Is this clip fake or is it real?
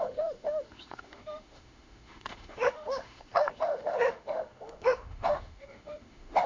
fake